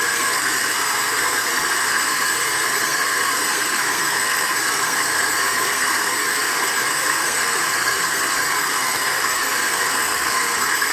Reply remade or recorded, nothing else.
remade